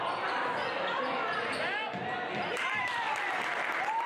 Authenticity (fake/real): real